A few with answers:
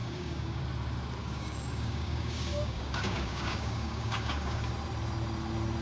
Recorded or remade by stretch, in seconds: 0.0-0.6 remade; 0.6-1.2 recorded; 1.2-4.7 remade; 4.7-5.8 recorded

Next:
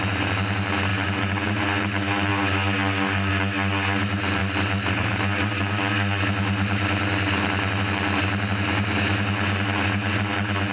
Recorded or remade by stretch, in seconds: 0.0-10.7 recorded

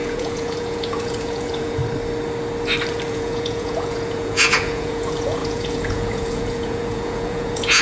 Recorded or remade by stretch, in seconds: 0.0-1.8 remade; 1.8-3.1 recorded; 3.1-7.8 remade

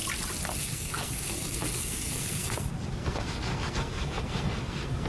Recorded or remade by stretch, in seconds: 0.0-0.6 recorded; 0.6-5.1 remade